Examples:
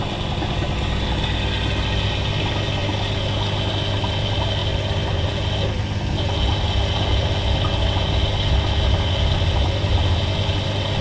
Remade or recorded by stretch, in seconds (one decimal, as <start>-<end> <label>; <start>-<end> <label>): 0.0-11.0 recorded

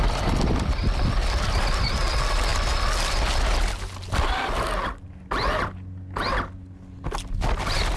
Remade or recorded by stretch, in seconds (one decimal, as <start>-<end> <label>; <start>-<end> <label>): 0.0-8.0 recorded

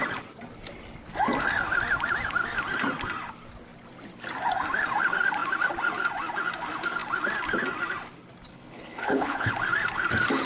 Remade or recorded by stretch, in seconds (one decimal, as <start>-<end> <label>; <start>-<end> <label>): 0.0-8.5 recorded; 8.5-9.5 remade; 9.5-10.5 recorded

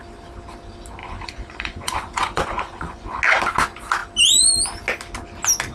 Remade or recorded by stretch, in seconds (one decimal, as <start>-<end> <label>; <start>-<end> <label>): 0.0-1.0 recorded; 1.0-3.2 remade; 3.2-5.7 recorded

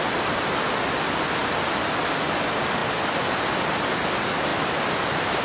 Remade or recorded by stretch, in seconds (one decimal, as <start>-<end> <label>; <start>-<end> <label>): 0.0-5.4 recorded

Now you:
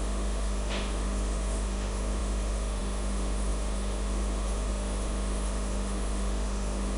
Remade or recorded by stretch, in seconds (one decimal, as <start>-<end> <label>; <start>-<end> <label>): 0.0-7.0 remade

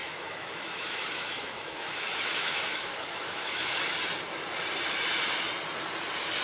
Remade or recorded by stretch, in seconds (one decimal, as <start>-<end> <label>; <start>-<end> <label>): 0.0-3.8 remade; 3.8-6.4 recorded